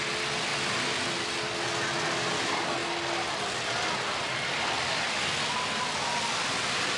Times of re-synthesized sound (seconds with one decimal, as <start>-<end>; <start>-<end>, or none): none